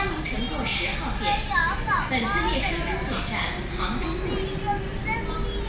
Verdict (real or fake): real